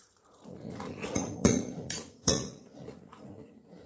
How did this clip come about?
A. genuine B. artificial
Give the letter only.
B